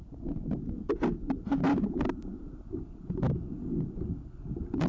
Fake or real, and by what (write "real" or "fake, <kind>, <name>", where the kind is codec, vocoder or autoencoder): real